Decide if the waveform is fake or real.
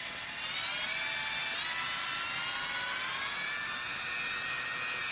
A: real